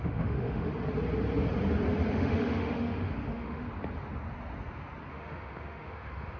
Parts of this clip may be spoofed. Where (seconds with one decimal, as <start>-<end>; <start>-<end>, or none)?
0.0-0.7; 2.1-3.6; 5.1-6.4

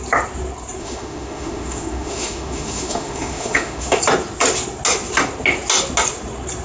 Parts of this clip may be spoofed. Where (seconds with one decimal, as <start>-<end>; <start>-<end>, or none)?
0.8-4.0

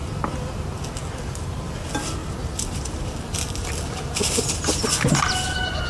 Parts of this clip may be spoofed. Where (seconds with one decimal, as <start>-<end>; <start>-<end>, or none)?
none

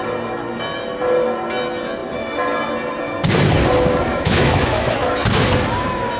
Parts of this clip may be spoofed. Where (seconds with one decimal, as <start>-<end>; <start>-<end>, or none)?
4.1-5.5

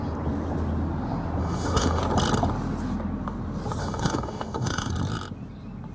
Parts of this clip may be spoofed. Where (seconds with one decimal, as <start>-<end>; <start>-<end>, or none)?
1.4-2.0; 3.8-4.9